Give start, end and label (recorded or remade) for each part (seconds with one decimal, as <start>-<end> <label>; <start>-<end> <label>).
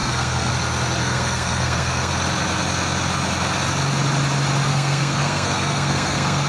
0.0-0.5 remade; 0.5-1.0 recorded; 1.0-2.1 remade; 2.1-4.7 recorded; 4.7-6.5 remade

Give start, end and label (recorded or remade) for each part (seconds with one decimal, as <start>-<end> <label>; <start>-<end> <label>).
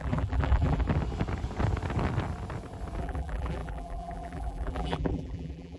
0.0-0.8 remade; 0.8-3.0 recorded; 3.0-5.8 remade